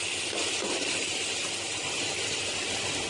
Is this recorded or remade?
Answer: recorded